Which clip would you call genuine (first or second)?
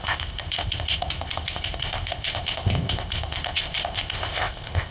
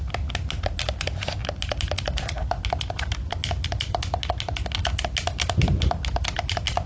second